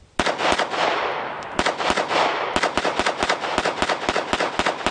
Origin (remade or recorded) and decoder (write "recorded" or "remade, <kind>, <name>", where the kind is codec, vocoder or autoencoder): recorded